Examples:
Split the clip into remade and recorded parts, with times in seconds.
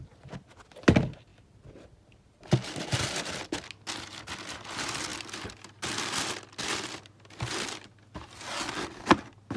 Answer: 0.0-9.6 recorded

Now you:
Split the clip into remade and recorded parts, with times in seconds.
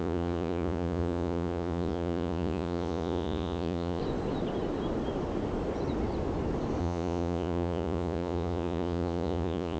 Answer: 0.0-4.0 remade; 4.0-6.8 recorded; 6.8-9.8 remade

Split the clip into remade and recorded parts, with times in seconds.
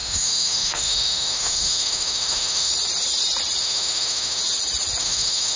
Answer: 0.0-2.7 remade; 2.7-3.6 recorded; 3.6-4.4 remade; 4.4-5.0 recorded; 5.0-5.6 remade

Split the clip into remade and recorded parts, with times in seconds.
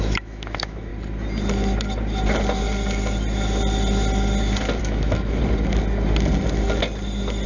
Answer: 0.0-0.9 remade; 0.9-4.8 recorded; 4.8-5.4 remade; 5.4-7.5 recorded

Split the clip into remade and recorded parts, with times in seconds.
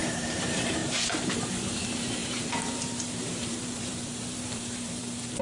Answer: 0.0-5.4 remade